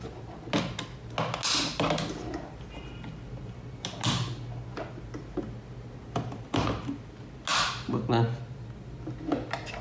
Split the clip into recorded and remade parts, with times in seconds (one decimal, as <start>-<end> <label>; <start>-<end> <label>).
0.0-9.8 recorded